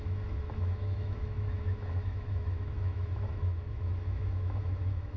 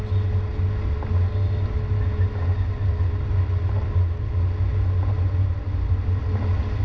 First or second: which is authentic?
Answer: second